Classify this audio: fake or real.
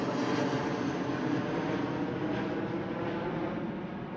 real